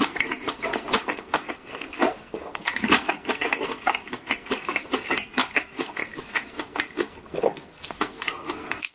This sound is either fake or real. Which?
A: fake